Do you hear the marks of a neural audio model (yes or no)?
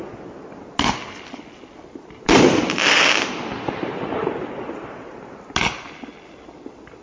no